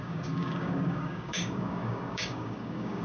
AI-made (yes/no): yes